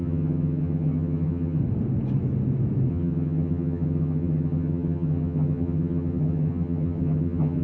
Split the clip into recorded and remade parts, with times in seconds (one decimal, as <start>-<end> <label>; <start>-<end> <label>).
0.0-1.6 remade; 1.6-2.9 recorded; 2.9-7.6 remade